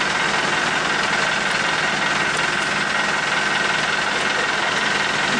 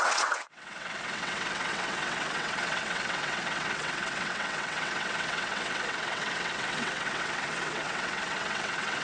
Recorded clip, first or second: first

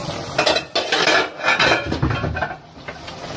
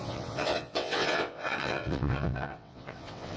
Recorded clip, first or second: first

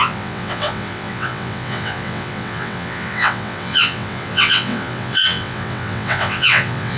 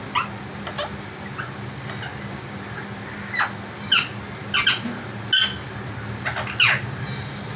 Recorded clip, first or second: second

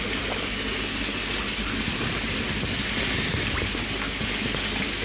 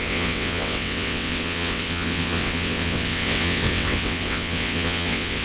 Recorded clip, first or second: first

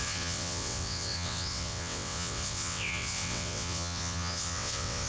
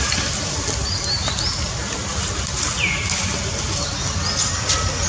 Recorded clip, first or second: second